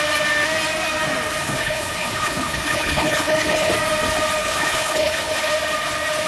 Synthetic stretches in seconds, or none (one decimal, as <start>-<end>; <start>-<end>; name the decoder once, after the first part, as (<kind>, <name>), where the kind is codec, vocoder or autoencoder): 1.4-3.7 (codec, HILCodec); 4.4-5.5